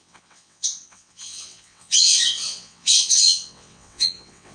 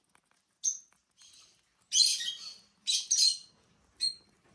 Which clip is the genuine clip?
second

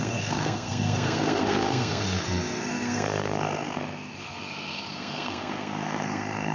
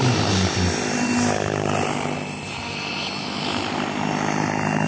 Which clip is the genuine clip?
second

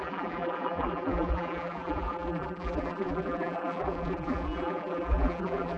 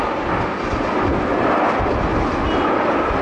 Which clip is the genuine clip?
second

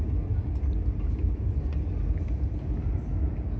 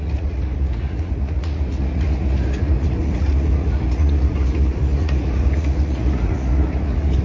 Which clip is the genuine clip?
first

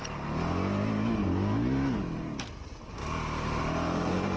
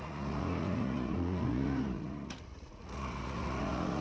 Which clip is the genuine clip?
first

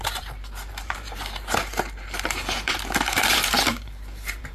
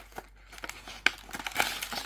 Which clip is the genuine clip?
second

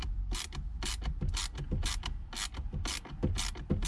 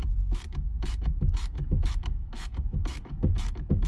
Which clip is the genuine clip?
first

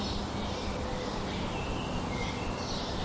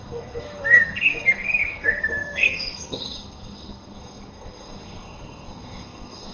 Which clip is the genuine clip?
first